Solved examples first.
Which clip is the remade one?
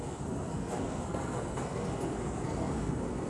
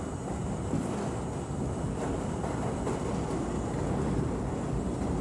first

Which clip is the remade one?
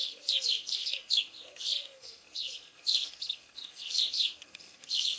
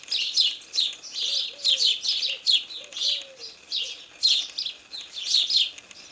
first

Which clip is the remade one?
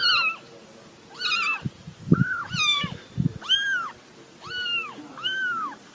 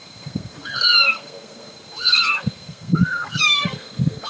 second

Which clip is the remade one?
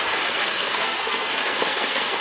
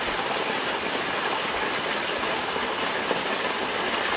first